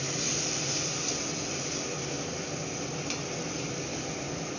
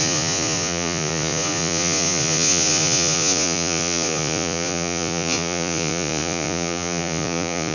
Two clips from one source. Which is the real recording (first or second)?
first